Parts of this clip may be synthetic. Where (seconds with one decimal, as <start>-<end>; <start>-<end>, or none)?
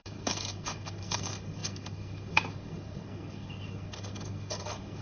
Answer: 0.0-5.0